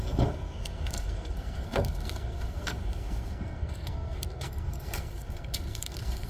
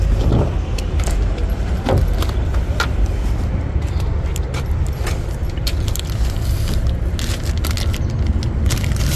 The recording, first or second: second